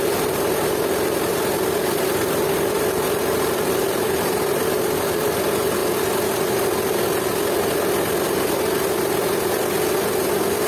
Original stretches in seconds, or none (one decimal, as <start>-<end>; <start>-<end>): 5.8-9.9

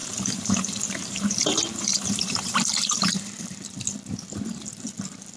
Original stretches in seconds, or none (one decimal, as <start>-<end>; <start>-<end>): 3.2-5.4

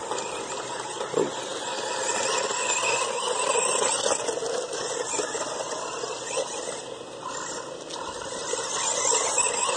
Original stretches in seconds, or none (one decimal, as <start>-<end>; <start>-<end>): 0.0-9.8

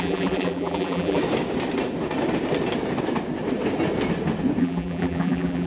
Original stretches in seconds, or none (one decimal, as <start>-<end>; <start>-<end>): 1.2-4.6